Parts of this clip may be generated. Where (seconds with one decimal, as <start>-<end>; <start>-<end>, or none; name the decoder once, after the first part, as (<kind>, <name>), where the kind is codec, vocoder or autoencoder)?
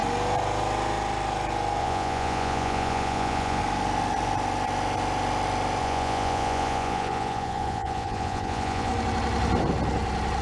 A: 1.8-3.6 (vocoder, Vocos); 5.8-8.9